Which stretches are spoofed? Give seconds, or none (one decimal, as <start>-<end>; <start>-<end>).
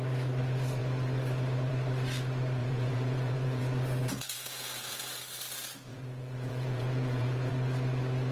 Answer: 2.6-3.6; 4.0-5.2; 5.9-7.5